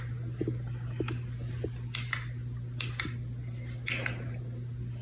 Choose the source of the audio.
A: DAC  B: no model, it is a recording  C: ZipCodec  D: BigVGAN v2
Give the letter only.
B